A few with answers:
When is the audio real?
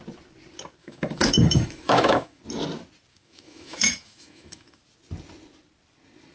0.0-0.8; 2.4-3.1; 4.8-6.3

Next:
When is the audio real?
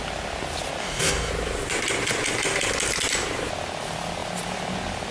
0.0-0.8; 1.3-5.1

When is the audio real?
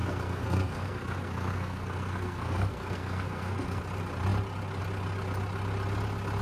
3.8-6.4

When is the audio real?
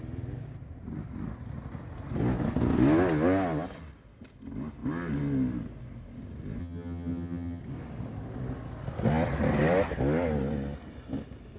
0.0-6.6; 7.6-11.6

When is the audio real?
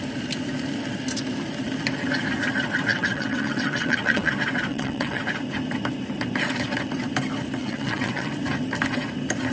0.0-2.9; 4.3-4.7; 5.2-7.6; 8.3-9.5